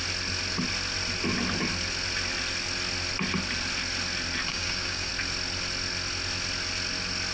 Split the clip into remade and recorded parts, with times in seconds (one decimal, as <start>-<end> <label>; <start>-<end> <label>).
0.0-4.5 recorded; 4.5-5.1 remade; 5.1-7.3 recorded